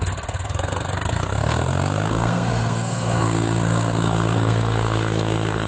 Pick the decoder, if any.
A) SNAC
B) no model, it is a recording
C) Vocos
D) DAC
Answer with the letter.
A